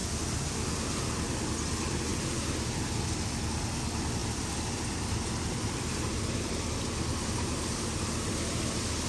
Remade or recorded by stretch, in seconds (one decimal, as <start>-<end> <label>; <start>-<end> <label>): 0.0-4.2 recorded; 4.2-6.8 remade; 6.8-9.1 recorded